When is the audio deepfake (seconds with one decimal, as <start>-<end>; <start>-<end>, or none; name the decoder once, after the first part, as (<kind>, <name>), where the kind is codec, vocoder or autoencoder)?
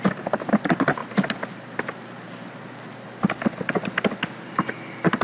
none